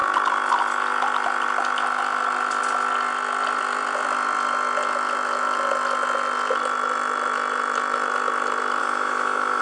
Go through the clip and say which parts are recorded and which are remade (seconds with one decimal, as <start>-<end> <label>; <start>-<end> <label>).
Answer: 0.0-8.8 recorded; 8.8-9.6 remade